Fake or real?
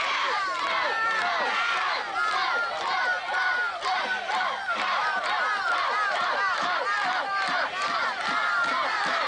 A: real